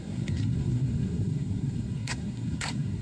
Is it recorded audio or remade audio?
remade